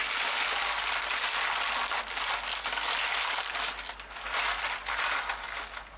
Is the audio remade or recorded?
recorded